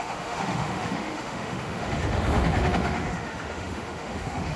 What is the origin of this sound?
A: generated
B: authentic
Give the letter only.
A